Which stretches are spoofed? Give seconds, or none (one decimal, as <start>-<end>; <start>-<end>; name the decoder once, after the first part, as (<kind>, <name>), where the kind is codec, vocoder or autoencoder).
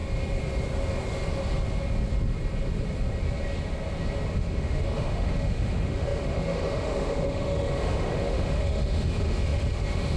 4.3-10.2 (autoencoder, DAC-VAE)